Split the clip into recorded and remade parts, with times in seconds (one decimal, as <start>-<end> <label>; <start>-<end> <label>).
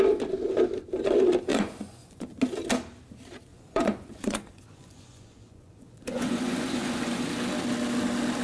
0.0-1.5 recorded; 1.5-2.4 remade; 2.4-3.5 recorded; 3.5-7.2 remade; 7.2-8.4 recorded